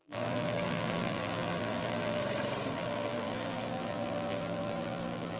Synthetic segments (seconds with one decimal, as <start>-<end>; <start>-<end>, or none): 0.0-2.2; 2.7-5.4

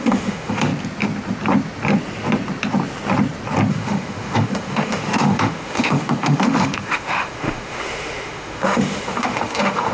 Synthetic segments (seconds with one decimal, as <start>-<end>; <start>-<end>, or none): 0.0-0.7; 3.7-9.9

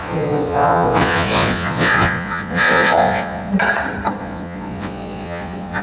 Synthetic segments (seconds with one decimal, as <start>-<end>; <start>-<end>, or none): 0.0-3.5; 4.2-5.8